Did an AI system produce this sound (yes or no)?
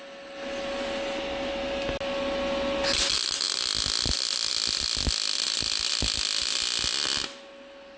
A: no